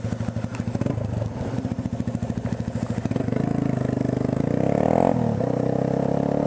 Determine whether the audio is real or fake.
real